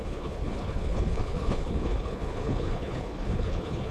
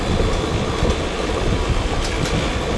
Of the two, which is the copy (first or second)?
first